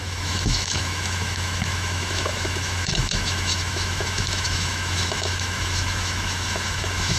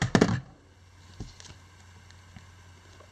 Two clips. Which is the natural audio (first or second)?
second